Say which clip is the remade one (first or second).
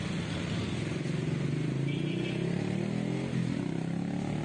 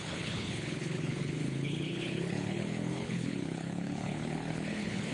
second